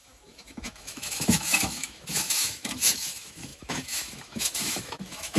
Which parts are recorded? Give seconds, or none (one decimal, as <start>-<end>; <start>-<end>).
none